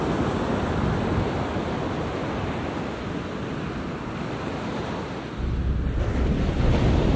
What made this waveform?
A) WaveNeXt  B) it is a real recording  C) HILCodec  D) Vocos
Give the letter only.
B